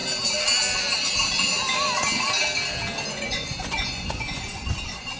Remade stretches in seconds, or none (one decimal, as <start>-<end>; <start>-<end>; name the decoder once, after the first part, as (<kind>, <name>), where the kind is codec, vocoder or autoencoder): 3.1-5.2 (vocoder, Vocos)